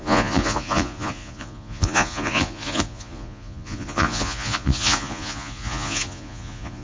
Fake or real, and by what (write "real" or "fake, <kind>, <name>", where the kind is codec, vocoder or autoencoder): fake, vocoder, Vocos